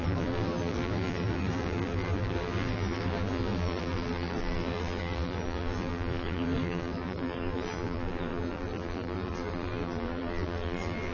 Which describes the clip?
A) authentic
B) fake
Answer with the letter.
B